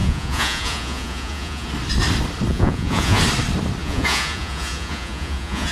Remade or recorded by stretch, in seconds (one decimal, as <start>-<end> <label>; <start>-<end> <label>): 0.0-1.7 remade; 1.7-2.5 recorded; 2.5-3.2 remade; 3.2-3.8 recorded; 3.8-5.7 remade